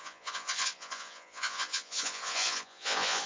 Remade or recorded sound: remade